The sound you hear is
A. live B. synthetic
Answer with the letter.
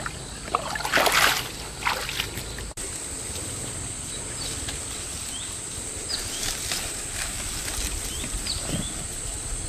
A